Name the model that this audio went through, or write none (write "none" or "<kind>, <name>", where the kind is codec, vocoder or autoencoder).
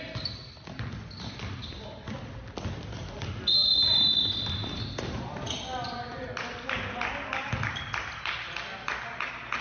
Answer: none